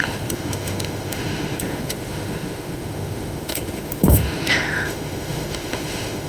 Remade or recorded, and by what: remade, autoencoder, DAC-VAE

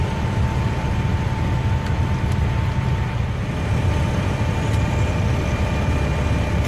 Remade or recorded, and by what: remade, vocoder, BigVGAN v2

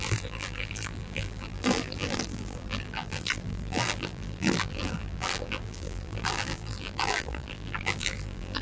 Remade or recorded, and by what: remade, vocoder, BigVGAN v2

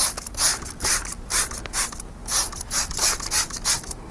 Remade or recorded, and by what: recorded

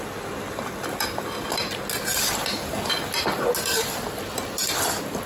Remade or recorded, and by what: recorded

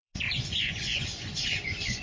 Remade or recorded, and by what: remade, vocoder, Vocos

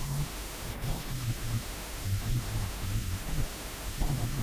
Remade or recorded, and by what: remade, autoencoder, DAC-VAE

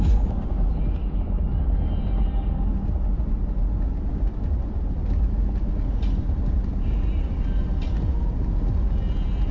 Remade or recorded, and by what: recorded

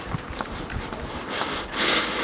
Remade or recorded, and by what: recorded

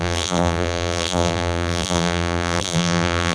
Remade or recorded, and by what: remade, vocoder, BigVGAN v2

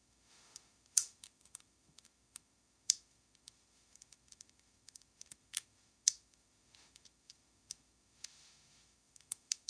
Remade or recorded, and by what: remade, autoencoder, DAC-VAE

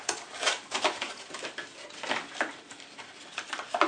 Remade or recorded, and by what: recorded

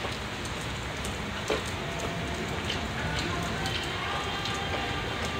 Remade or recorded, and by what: recorded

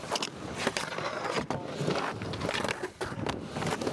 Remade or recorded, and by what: recorded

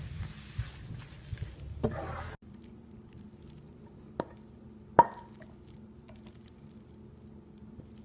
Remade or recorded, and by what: recorded